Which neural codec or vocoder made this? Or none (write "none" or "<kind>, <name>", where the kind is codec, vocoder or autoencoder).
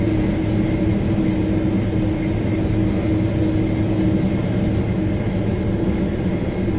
none